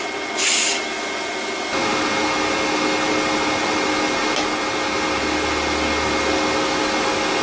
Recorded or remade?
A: recorded